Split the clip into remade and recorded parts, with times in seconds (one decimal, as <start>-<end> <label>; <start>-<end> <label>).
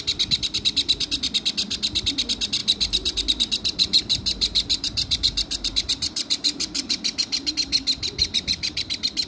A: 0.0-2.6 recorded; 2.6-7.5 remade; 7.5-8.2 recorded; 8.2-8.9 remade; 8.9-9.3 recorded